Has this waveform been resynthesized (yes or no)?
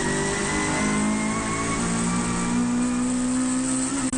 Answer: no